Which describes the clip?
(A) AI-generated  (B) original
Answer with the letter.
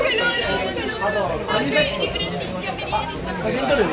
B